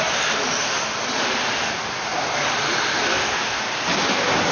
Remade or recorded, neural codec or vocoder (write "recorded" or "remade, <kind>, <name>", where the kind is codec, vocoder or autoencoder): recorded